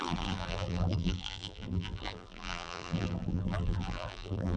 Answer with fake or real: fake